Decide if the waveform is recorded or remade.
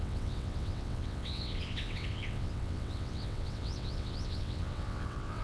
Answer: remade